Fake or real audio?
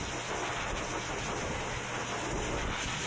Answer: real